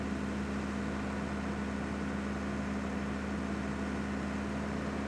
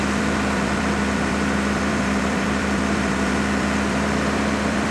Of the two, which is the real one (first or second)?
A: first